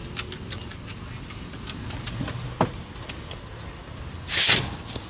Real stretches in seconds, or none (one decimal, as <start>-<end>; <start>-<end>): 0.0-5.1